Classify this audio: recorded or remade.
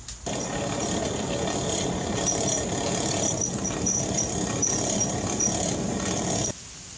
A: recorded